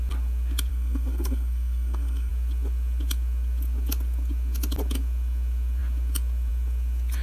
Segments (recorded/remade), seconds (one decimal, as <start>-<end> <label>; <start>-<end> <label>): 0.0-0.7 recorded; 0.7-2.3 remade; 2.3-7.2 recorded